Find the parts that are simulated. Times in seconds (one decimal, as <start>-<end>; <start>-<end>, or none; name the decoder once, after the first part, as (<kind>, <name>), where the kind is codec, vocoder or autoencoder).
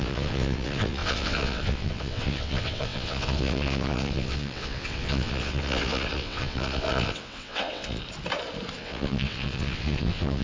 0.0-8.0 (vocoder, WaveNeXt); 8.8-10.4